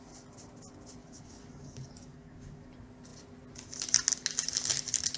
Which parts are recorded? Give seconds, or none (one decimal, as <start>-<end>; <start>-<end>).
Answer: 0.0-1.0; 2.7-5.2